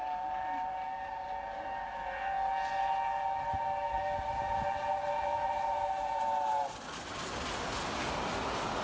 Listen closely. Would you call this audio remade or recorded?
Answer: recorded